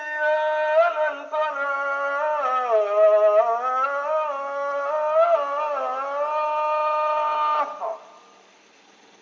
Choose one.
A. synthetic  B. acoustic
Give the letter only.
B